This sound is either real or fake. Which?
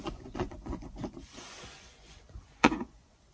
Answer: fake